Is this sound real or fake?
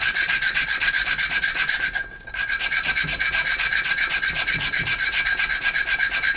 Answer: real